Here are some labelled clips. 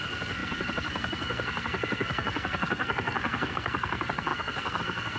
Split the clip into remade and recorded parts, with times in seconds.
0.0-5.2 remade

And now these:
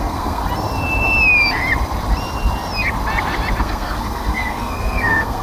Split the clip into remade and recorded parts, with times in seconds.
0.0-0.4 remade; 0.4-3.6 recorded; 3.6-5.4 remade

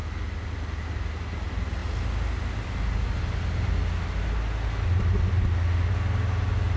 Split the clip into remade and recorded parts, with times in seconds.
0.0-6.8 recorded

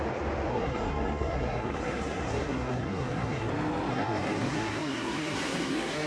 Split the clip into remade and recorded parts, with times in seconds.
0.0-0.5 recorded; 0.5-3.5 remade; 3.5-3.9 recorded; 3.9-6.1 remade